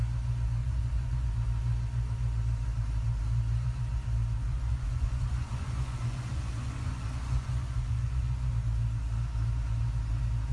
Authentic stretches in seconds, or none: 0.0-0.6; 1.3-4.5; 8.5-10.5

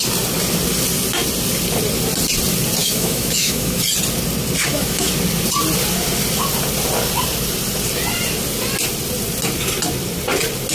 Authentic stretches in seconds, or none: 0.0-2.8; 3.8-4.6; 5.1-10.7

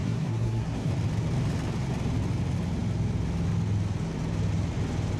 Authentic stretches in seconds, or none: 0.9-5.2

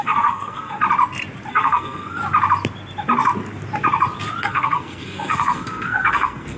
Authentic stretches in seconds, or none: 0.8-1.5; 2.2-4.4

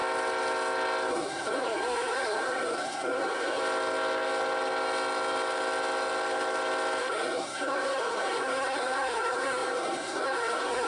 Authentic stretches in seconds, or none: 0.0-1.1; 3.6-7.0